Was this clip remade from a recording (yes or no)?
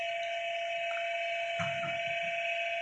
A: no